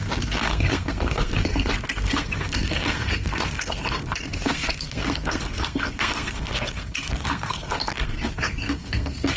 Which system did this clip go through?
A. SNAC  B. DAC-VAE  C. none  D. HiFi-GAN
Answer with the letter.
A